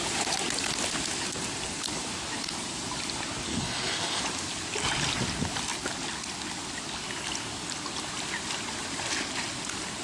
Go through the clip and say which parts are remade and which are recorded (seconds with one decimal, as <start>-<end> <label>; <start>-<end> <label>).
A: 0.0-3.5 recorded; 3.5-4.2 remade; 4.2-10.0 recorded